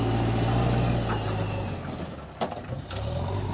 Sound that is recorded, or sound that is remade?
recorded